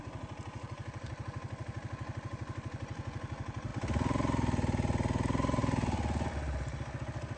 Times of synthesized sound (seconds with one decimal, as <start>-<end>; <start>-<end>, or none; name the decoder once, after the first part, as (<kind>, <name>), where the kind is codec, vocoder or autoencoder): none